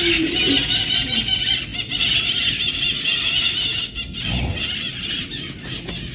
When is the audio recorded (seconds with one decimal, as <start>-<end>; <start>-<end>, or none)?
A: 0.0-6.1